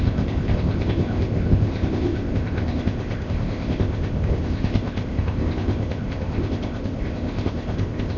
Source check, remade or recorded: remade